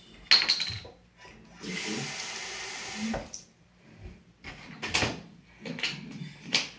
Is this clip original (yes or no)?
yes